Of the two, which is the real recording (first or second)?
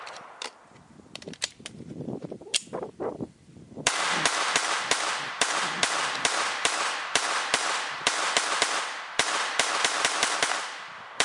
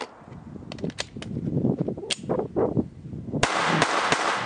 second